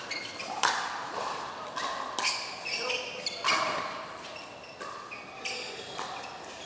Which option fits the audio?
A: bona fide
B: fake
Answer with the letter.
A